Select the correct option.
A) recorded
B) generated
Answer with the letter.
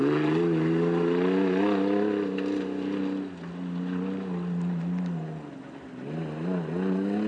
A